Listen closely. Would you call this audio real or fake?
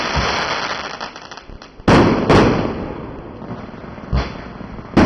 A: real